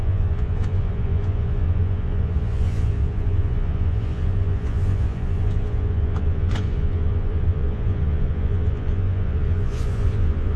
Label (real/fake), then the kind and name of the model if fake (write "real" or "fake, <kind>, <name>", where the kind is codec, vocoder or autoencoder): fake, vocoder, Vocos